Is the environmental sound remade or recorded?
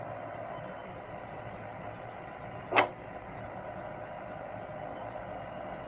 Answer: recorded